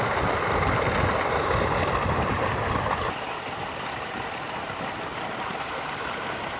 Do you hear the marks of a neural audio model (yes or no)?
yes